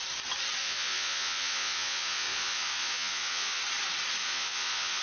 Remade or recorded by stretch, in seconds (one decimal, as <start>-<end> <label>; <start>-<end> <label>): 0.0-0.6 recorded; 0.6-3.6 remade; 3.6-4.2 recorded; 4.2-5.0 remade